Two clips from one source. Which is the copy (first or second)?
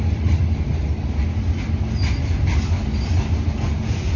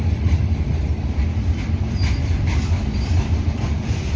second